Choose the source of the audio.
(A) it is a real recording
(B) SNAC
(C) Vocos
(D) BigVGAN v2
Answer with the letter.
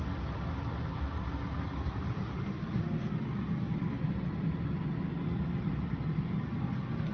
A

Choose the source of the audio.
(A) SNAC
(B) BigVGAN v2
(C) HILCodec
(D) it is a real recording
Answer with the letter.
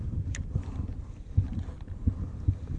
D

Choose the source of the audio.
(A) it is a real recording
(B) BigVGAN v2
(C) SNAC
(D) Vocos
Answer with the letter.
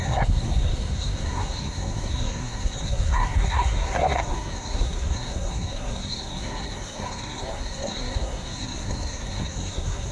C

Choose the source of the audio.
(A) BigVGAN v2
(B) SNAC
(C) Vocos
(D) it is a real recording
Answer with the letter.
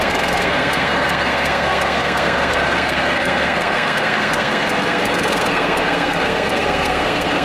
B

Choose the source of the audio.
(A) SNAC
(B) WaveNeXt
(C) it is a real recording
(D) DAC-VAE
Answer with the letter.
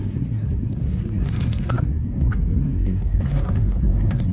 A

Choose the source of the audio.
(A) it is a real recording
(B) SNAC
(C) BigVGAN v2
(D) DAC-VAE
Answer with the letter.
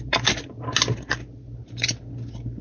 A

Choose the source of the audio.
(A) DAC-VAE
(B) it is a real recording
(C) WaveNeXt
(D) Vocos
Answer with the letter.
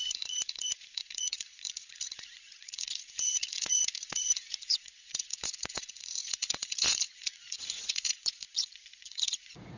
D